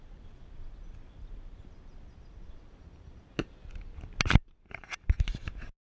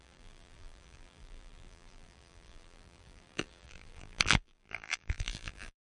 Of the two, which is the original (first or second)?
first